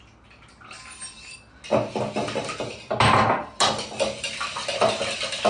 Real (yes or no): yes